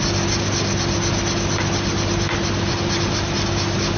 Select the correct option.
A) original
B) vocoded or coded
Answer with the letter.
A